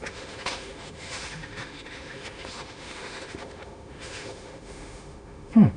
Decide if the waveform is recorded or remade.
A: remade